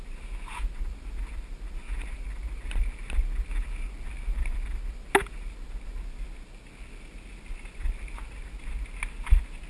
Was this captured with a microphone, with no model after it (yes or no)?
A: yes